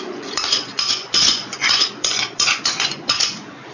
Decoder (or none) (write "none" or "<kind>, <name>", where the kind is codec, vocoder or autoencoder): vocoder, Vocos